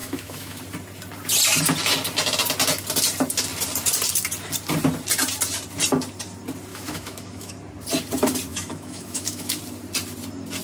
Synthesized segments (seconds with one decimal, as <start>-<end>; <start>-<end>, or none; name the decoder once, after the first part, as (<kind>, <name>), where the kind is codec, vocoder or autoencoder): 0.0-0.6 (autoencoder, DAC-VAE); 6.7-7.5; 8.5-9.6